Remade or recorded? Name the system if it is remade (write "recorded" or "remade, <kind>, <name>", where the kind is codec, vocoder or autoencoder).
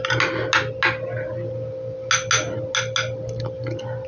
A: recorded